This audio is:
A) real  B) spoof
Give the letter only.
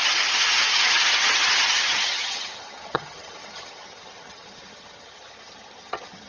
B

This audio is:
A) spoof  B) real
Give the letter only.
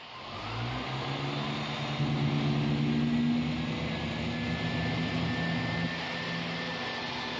B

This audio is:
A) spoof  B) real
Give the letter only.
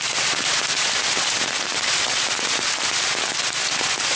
B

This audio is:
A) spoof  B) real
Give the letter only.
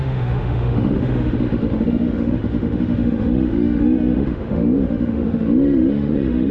A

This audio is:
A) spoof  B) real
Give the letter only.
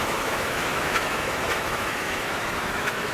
A